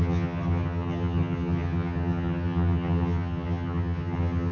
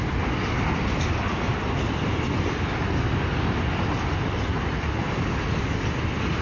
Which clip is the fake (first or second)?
first